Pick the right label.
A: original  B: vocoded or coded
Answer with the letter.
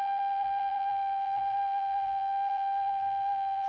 B